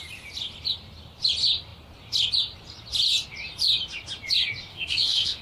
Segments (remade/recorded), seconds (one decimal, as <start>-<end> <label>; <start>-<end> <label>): 0.0-4.7 recorded; 4.7-5.4 remade